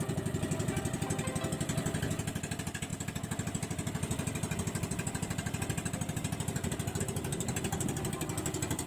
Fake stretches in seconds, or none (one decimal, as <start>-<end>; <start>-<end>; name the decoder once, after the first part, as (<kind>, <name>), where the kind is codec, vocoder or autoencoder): none